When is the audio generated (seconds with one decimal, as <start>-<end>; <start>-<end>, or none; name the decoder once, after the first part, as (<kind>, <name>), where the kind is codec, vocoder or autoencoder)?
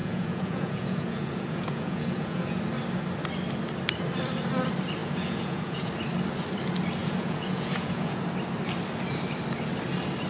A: 0.0-2.6 (vocoder, Vocos); 5.0-5.9; 7.0-8.2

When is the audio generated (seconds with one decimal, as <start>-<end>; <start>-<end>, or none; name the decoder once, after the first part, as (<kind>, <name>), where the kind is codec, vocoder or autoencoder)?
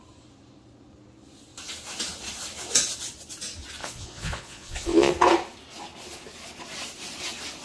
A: 3.8-5.1 (vocoder, Vocos)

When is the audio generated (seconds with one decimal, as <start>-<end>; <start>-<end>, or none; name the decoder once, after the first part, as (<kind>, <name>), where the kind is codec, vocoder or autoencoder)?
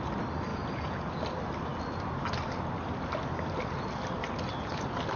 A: 0.5-1.1 (vocoder, Vocos)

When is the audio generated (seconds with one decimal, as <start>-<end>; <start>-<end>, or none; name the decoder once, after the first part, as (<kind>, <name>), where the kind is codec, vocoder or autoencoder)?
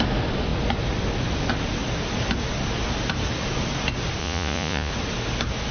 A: 4.2-4.9 (vocoder, Vocos)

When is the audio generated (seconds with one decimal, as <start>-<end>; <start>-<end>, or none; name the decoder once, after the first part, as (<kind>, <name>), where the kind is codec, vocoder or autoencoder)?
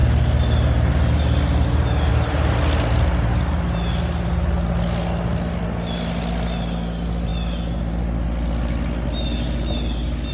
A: none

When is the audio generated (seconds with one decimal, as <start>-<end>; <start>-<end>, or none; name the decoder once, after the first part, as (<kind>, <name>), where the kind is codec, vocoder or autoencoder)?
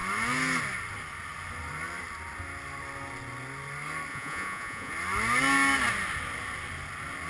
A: 4.1-4.9 (vocoder, Vocos)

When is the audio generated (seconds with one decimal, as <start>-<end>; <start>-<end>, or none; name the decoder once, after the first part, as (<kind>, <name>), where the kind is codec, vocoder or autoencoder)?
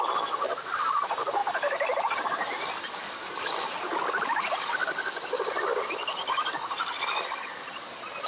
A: none